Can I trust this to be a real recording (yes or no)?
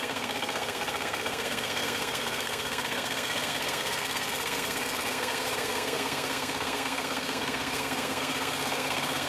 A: no